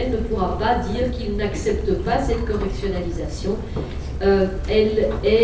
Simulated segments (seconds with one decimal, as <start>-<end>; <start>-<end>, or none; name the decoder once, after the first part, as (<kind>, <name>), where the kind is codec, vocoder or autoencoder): none